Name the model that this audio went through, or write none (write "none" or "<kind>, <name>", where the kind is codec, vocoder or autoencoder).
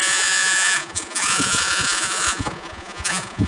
vocoder, Vocos